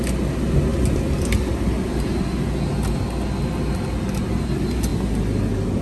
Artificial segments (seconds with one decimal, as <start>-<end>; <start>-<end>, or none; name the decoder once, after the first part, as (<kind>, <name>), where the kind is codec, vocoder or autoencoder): none